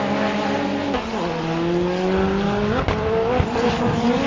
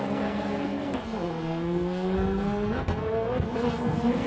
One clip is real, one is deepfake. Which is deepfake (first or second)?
second